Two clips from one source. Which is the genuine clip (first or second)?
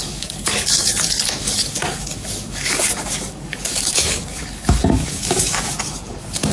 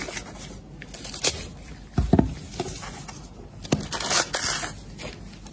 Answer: second